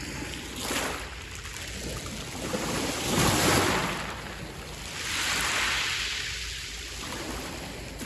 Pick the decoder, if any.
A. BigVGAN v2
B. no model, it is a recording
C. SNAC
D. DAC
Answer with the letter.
B